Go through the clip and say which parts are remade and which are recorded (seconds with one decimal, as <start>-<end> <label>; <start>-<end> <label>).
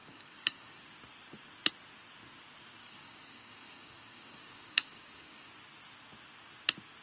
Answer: 0.0-0.8 remade; 0.8-2.8 recorded; 2.8-5.5 remade; 5.5-7.0 recorded